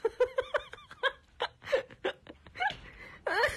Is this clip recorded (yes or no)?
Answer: yes